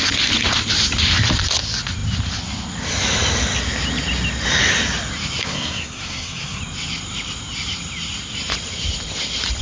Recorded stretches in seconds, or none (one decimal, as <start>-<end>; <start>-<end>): 0.0-5.4; 6.6-9.6